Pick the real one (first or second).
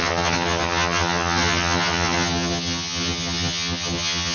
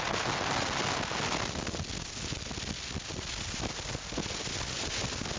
second